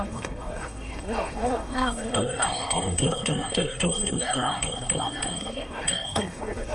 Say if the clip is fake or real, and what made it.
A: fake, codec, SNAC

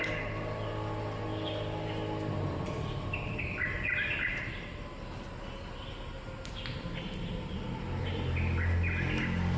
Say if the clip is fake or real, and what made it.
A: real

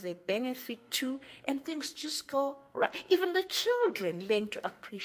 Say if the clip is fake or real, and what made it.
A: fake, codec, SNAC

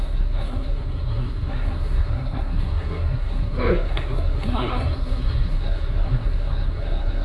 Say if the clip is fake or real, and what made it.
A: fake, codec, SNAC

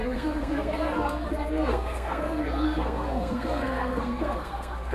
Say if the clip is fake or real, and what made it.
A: fake, codec, SNAC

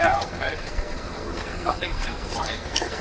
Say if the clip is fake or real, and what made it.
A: fake, codec, SNAC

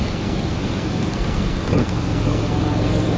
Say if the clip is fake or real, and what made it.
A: fake, codec, SNAC